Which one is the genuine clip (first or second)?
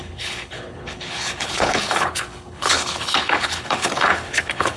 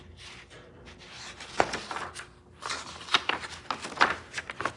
second